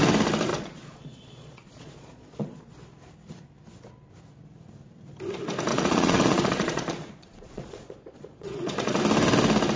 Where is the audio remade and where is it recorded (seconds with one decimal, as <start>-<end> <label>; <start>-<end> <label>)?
0.0-0.5 recorded; 0.5-2.7 remade; 2.7-5.7 recorded; 5.7-9.0 remade; 9.0-9.8 recorded